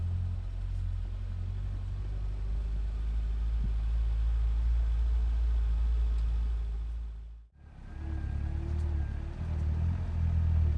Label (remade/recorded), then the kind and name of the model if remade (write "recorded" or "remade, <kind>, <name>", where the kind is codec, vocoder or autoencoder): recorded